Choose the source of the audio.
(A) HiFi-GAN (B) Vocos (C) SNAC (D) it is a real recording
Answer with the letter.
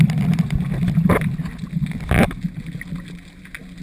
D